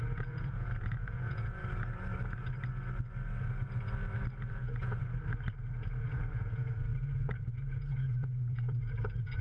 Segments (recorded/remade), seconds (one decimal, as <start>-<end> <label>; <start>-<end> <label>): 0.0-1.6 remade; 1.6-4.5 recorded; 4.5-5.0 remade; 5.0-6.3 recorded; 6.3-9.4 remade